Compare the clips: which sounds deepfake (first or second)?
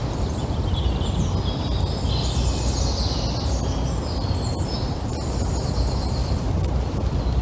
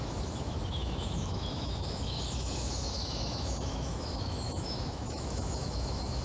second